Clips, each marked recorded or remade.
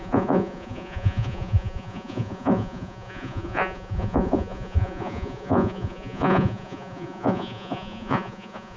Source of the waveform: remade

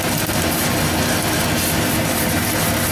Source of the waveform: recorded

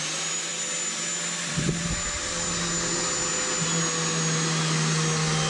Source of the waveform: recorded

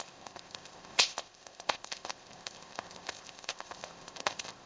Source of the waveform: remade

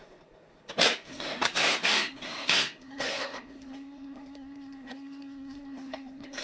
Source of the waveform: remade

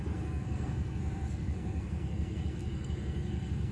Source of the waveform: remade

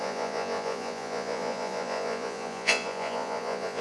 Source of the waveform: remade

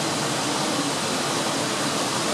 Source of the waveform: recorded